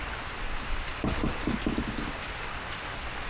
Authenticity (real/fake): real